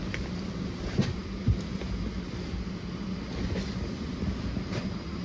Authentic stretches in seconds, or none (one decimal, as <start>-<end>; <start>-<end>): 0.0-5.2